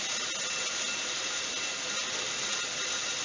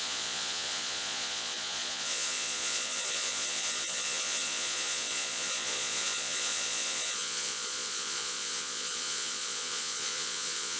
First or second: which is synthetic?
second